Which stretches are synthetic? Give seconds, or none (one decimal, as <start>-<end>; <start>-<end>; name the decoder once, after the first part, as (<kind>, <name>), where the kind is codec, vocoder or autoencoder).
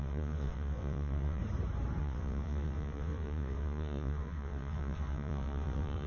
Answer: 0.0-1.4 (vocoder, WaveNeXt); 2.0-6.1